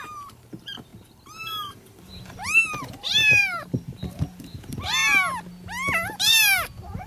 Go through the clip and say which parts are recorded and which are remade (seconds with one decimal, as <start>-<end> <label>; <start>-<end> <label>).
0.0-5.0 remade; 5.0-6.1 recorded; 6.1-7.1 remade